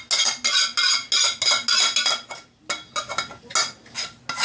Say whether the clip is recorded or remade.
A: recorded